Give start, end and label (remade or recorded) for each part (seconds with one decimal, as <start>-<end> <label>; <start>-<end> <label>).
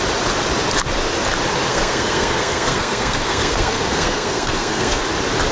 0.0-1.7 recorded; 1.7-5.0 remade; 5.0-5.5 recorded